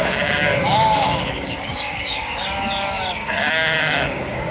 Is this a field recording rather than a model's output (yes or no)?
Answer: no